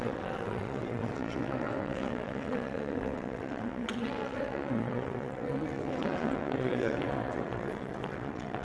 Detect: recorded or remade remade